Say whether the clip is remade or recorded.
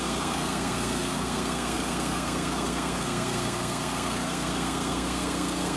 remade